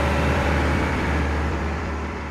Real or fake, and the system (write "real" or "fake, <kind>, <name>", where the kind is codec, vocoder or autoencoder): fake, vocoder, BigVGAN v2